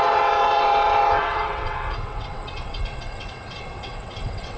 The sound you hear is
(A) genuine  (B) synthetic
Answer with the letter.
B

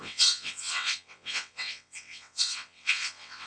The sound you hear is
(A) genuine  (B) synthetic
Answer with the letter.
B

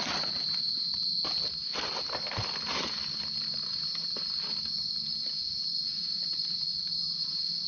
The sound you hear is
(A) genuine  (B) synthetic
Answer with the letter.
A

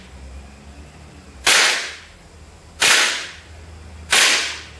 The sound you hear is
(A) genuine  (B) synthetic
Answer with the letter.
A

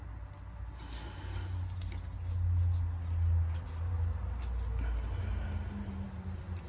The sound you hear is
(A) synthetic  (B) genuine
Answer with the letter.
B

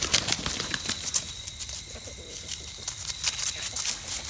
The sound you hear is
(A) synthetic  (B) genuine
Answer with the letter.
B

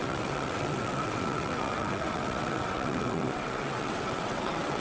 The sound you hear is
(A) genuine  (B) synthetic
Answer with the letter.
B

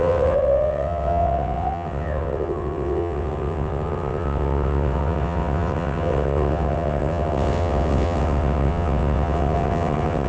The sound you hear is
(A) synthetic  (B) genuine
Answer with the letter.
A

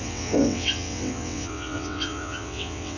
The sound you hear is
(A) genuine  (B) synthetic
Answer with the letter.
B